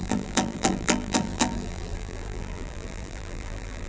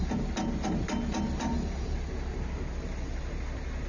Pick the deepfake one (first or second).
first